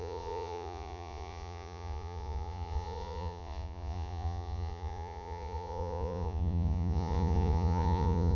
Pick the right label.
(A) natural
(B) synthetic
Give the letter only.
B